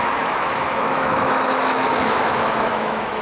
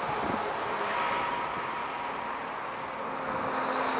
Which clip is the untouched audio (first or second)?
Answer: second